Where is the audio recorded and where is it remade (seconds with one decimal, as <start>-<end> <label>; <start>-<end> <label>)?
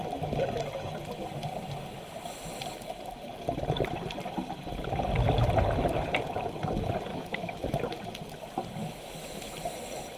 0.0-7.1 recorded; 7.1-7.8 remade; 7.8-8.8 recorded; 8.8-9.5 remade; 9.5-10.2 recorded